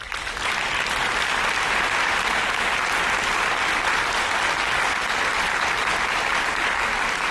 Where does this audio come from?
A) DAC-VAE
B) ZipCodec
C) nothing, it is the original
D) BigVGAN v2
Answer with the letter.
C